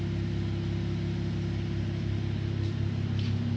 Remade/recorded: recorded